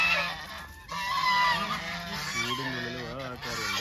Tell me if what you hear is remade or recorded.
recorded